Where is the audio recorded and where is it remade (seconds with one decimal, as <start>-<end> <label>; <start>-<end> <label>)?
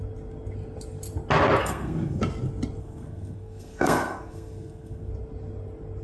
0.0-1.6 recorded; 1.6-2.2 remade; 2.2-2.8 recorded; 2.8-5.1 remade; 5.1-6.0 recorded